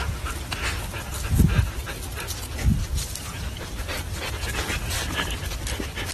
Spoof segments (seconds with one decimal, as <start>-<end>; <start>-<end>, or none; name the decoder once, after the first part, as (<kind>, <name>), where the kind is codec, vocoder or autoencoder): 0.0-1.2 (vocoder, BigVGAN v2); 2.8-4.2